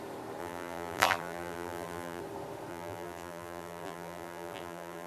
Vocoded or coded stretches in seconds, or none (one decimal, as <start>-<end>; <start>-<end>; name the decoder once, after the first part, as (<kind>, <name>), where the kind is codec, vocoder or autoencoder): 0.4-2.2 (vocoder, BigVGAN v2); 2.7-5.1